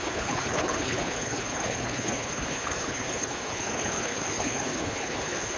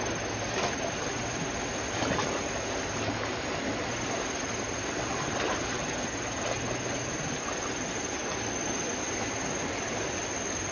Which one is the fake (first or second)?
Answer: first